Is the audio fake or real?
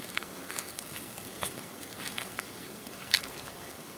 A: fake